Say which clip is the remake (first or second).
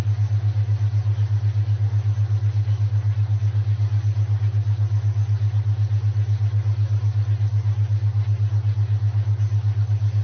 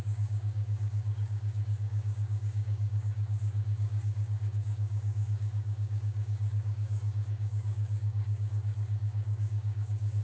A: second